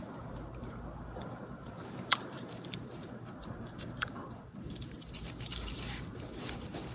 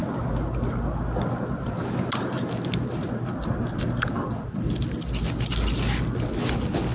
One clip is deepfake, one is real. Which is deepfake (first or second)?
first